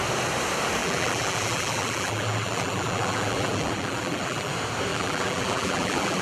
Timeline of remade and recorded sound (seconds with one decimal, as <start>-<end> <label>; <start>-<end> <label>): 0.0-0.8 recorded; 0.8-4.5 remade; 4.5-4.9 recorded; 4.9-6.2 remade